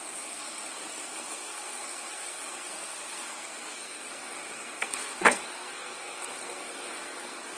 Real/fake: fake